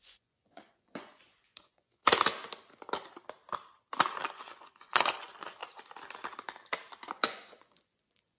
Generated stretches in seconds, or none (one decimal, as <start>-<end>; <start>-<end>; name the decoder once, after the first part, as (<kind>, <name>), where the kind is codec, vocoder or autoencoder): 0.0-2.0 (vocoder, Vocos); 4.3-5.6; 7.1-8.4